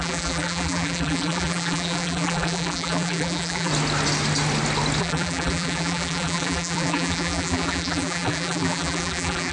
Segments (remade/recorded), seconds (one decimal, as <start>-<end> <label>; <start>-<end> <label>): 0.0-3.7 remade; 3.7-5.0 recorded; 5.0-9.5 remade

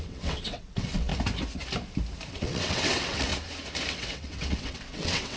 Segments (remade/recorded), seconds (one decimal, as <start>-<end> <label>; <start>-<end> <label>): 0.0-1.1 remade; 1.1-2.3 recorded; 2.3-3.3 remade; 3.3-3.9 recorded; 3.9-5.4 remade

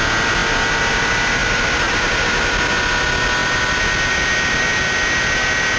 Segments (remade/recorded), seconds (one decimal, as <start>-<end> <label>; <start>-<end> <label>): 0.0-5.8 recorded

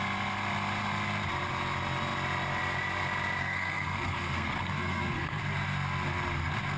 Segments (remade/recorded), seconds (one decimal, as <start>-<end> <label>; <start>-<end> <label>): 0.0-3.4 recorded; 3.4-5.4 remade; 5.4-6.8 recorded